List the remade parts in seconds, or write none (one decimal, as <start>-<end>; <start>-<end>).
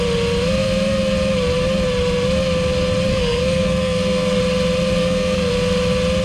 3.1-4.4; 5.0-5.5